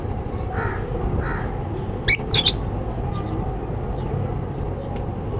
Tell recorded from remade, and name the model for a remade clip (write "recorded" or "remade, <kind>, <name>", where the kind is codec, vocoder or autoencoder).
recorded